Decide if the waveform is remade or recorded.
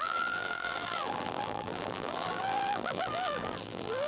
remade